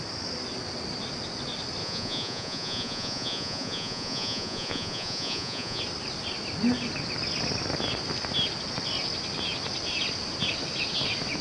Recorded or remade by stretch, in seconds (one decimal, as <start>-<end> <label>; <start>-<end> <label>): 0.0-1.8 recorded; 1.8-5.8 remade; 5.8-11.4 recorded